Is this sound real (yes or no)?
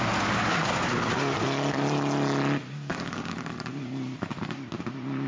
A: yes